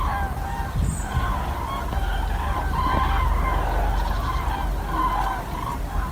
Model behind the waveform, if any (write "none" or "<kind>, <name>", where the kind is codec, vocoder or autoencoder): none